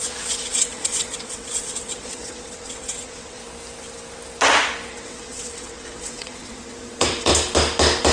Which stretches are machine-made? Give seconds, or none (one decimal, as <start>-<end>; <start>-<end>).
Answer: 0.0-3.4; 4.9-7.3